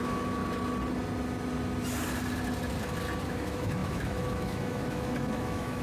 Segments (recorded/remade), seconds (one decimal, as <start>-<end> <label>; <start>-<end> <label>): 0.0-0.4 remade; 0.4-3.3 recorded; 3.3-5.8 remade